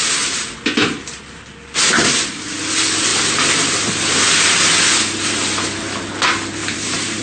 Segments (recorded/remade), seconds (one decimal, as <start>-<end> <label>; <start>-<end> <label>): 0.0-3.1 recorded; 3.1-3.9 remade; 3.9-6.6 recorded; 6.6-7.2 remade